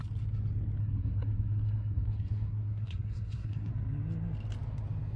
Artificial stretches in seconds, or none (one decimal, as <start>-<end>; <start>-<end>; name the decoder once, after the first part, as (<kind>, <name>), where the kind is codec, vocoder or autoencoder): 0.8-3.7 (codec, SNAC)